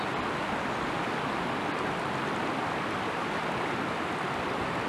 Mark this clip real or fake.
real